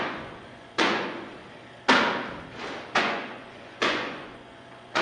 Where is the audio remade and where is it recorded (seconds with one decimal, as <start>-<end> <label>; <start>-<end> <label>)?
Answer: 0.0-1.4 remade; 1.4-3.0 recorded; 3.0-5.0 remade